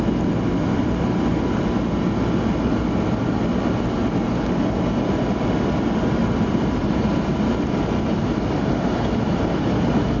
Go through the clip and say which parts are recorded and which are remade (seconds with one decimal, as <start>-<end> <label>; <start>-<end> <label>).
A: 0.0-6.2 recorded; 6.2-7.4 remade; 7.4-8.1 recorded; 8.1-8.8 remade; 8.8-10.2 recorded